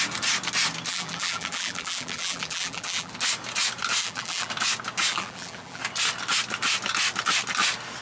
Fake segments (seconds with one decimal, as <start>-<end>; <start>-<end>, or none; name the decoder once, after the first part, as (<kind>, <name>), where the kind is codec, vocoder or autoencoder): 0.9-3.1 (vocoder, BigVGAN v2); 4.0-4.5; 5.1-5.8